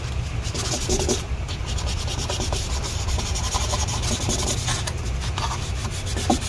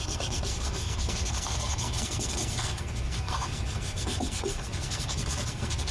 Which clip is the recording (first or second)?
first